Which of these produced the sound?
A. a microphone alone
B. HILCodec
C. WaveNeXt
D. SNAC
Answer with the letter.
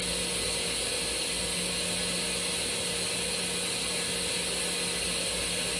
A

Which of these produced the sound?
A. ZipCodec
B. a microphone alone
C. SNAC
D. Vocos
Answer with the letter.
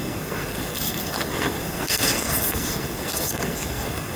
C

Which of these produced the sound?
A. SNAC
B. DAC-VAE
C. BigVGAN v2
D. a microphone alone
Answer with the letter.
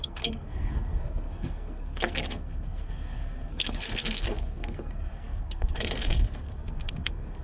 A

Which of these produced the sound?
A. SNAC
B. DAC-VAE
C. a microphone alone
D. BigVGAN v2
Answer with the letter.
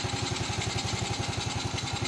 C